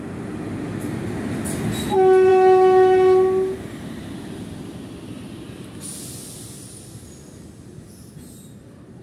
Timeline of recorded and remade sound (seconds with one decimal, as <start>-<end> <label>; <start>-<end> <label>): 0.0-9.0 recorded